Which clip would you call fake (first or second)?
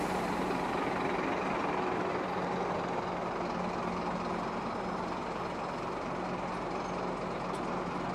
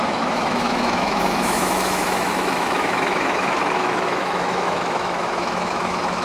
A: second